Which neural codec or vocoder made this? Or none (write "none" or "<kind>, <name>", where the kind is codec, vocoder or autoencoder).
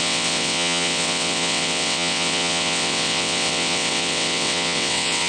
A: vocoder, WaveNeXt